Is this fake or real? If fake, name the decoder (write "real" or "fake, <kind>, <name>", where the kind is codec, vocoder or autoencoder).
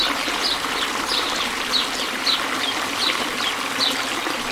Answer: real